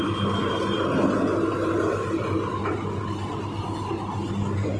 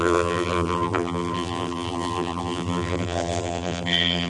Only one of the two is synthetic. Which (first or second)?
second